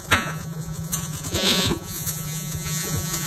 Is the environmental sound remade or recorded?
remade